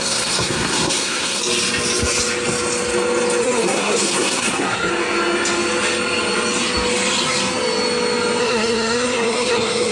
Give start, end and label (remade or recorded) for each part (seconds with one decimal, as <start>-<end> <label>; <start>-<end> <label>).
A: 0.0-1.4 remade; 1.4-3.4 recorded; 3.4-4.9 remade; 4.9-8.4 recorded; 8.4-9.9 remade